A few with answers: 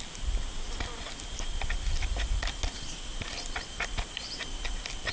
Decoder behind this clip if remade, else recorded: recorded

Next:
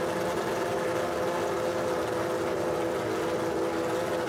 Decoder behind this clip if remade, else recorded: recorded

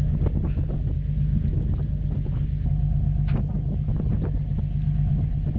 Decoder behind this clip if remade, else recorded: recorded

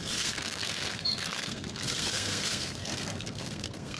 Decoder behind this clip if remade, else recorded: remade, codec, SNAC